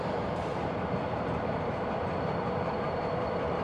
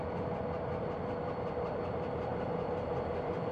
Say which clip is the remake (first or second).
first